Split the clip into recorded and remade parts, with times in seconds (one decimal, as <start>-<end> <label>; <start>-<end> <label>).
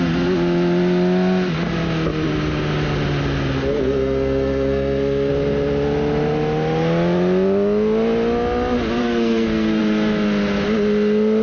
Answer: 0.0-3.7 recorded; 3.7-5.3 remade; 5.3-9.0 recorded; 9.0-9.8 remade; 9.8-11.4 recorded